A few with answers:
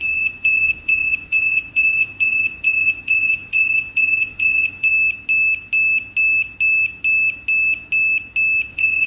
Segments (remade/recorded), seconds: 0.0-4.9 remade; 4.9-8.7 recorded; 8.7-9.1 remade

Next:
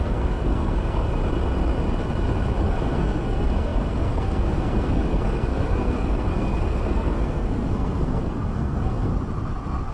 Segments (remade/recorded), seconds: 0.0-1.2 remade; 1.2-2.6 recorded; 2.6-9.1 remade; 9.1-9.9 recorded

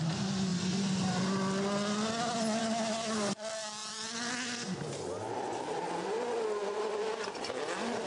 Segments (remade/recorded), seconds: 0.0-3.8 recorded; 3.8-4.3 remade; 4.3-8.1 recorded